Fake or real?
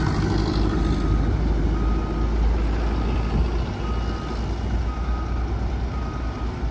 real